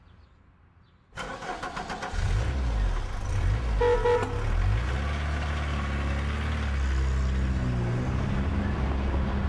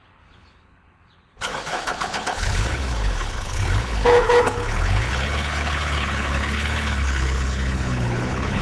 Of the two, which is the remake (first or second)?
second